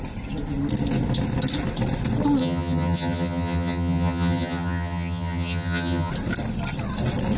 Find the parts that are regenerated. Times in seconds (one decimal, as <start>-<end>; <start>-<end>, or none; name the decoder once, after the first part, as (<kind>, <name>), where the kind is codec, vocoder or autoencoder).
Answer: 2.4-6.1 (vocoder, HiFi-GAN)